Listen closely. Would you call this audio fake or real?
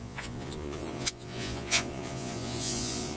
fake